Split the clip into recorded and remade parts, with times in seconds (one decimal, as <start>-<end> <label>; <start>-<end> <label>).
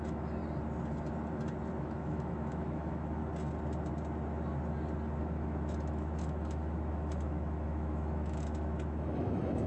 0.0-0.4 remade; 0.4-1.8 recorded; 1.8-3.2 remade; 3.2-5.2 recorded; 5.2-9.7 remade